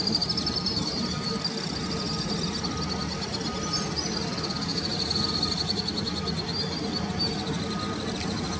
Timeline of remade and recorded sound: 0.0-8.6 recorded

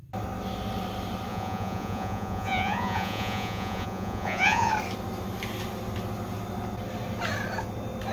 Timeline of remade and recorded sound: 0.0-1.3 recorded; 1.3-4.7 remade; 4.7-8.1 recorded

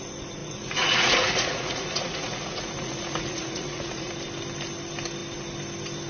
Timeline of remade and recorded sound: 0.0-0.4 recorded; 0.4-4.1 remade; 4.1-6.1 recorded

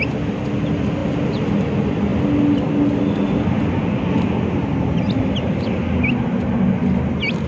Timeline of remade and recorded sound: 0.0-7.5 recorded

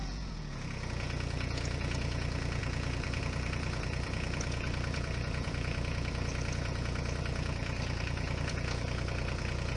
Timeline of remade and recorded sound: 0.0-9.8 remade

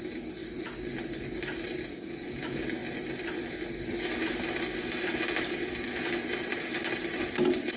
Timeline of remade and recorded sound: 0.0-7.8 recorded

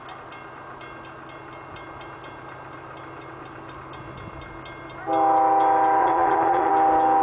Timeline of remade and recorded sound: 0.0-6.0 recorded; 6.0-6.7 remade; 6.7-7.2 recorded

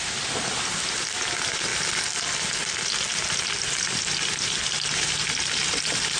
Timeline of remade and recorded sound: 0.0-6.2 recorded